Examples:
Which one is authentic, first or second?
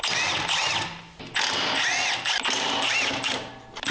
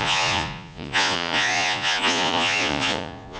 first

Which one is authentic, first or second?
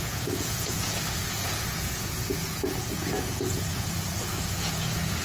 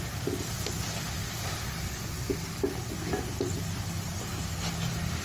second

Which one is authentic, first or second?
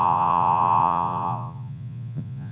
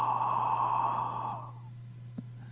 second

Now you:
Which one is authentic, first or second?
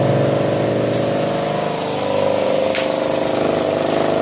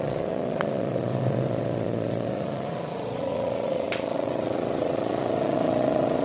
first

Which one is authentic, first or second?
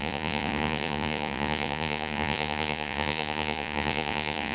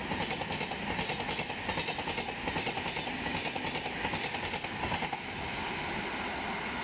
second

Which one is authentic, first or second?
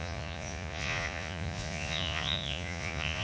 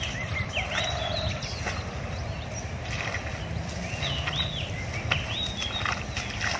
second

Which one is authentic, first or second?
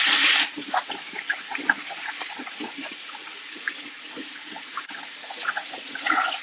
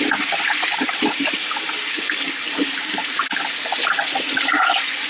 second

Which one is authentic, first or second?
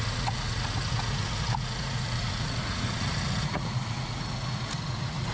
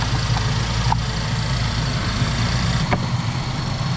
second